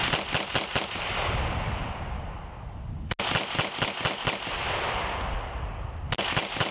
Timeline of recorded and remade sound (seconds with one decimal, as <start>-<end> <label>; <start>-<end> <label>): 0.0-6.7 recorded